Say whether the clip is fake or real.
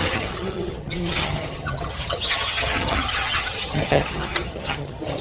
fake